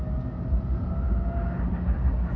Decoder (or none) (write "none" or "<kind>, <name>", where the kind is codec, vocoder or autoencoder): none